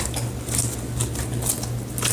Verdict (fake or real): real